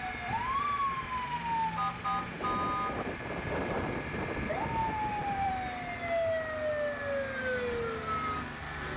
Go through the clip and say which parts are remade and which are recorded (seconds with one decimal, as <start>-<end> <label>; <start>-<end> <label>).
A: 0.0-4.8 recorded; 4.8-5.5 remade; 5.5-9.0 recorded